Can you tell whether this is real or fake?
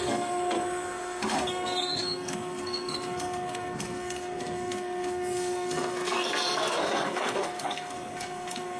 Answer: fake